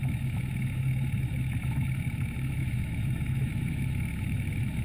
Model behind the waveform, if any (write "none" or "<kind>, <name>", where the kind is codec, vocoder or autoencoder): autoencoder, DAC-VAE